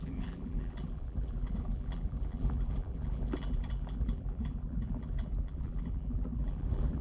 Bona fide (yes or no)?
no